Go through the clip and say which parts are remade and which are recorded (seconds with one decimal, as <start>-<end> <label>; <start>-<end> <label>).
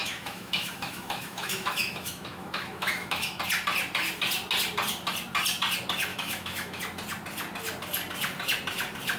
0.0-3.4 remade; 3.4-6.1 recorded; 6.1-6.8 remade; 6.8-9.2 recorded